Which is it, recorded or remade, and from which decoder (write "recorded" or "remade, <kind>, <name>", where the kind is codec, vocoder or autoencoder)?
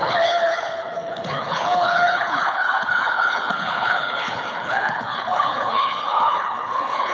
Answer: remade, codec, HILCodec